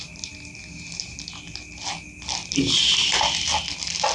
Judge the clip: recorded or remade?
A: recorded